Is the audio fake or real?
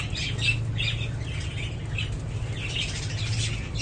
real